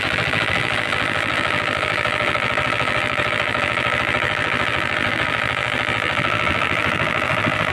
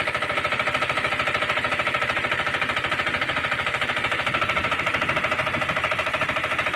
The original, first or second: second